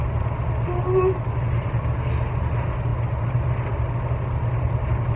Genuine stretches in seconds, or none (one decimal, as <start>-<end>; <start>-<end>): 0.0-2.9; 3.7-5.2